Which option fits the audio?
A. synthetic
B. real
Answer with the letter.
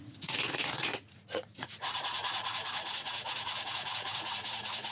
A